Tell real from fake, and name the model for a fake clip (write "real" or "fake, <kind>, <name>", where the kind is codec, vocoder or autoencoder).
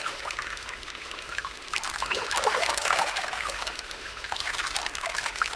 fake, autoencoder, DAC-VAE